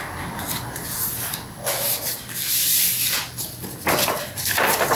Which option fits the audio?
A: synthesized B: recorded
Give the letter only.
B